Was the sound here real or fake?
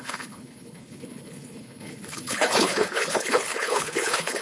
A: fake